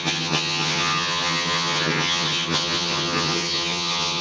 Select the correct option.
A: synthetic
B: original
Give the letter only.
A